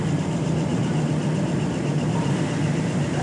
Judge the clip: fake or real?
real